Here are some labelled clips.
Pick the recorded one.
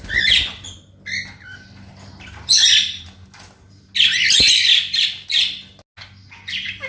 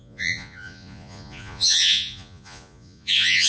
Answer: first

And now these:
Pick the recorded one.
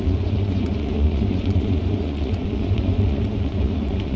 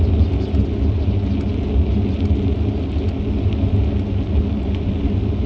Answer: second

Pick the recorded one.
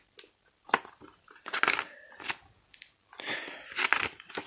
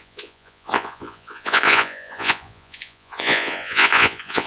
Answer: first